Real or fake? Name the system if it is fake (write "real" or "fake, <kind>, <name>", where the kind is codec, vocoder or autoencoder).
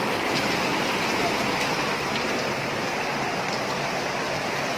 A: real